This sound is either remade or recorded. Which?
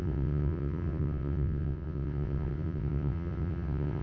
remade